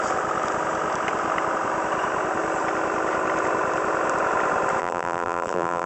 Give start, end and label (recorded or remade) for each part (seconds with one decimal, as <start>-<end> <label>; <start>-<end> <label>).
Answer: 0.0-4.8 recorded; 4.8-5.9 remade